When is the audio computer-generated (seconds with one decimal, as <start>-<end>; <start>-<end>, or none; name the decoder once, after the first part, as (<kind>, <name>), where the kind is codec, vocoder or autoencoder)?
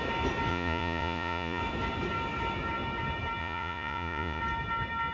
0.5-1.6 (vocoder, Vocos); 3.4-4.4